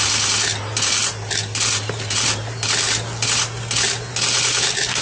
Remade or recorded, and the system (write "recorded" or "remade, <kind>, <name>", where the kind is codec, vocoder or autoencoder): recorded